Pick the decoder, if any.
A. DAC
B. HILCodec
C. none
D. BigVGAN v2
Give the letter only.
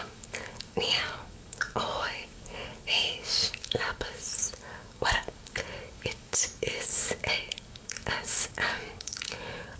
A